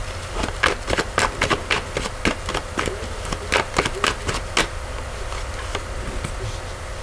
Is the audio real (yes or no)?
yes